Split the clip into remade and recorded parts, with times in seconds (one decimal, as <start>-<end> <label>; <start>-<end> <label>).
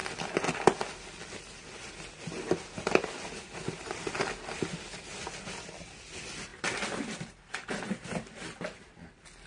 0.0-9.5 recorded